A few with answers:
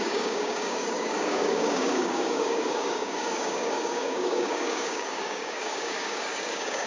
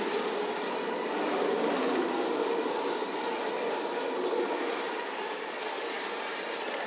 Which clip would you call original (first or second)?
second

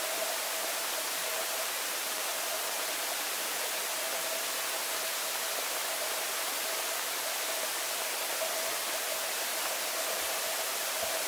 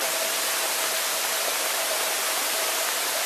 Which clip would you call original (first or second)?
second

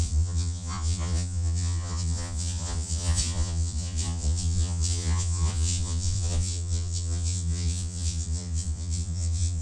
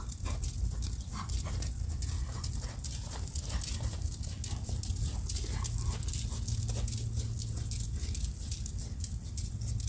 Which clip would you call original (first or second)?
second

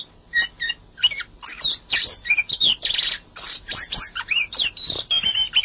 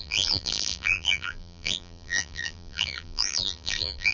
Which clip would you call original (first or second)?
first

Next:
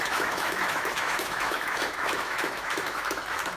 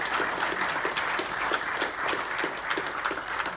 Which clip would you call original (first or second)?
second